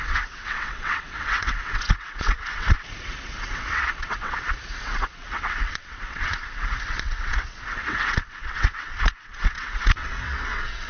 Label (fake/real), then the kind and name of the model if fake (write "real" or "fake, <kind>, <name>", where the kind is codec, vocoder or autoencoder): fake, vocoder, WaveNeXt